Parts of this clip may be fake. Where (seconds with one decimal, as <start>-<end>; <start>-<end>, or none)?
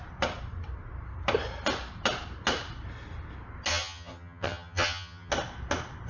3.7-5.3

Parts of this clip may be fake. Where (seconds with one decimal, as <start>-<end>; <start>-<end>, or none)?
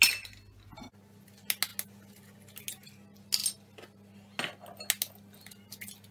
none